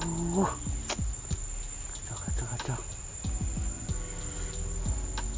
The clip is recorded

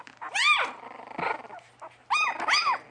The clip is recorded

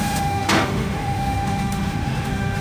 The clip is remade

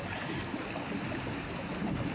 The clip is recorded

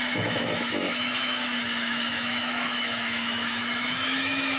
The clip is remade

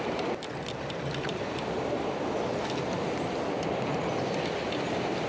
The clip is recorded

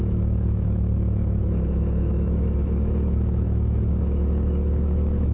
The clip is remade